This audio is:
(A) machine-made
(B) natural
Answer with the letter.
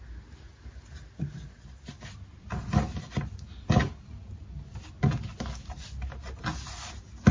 B